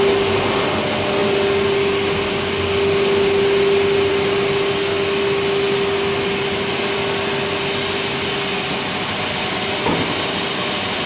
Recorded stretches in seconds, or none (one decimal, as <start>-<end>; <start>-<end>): 0.0-11.1